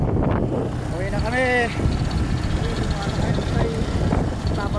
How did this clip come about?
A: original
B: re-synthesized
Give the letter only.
A